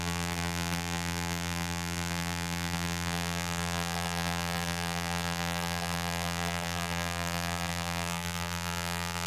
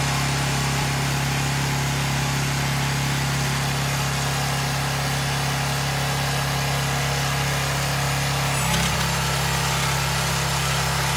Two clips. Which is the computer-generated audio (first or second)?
first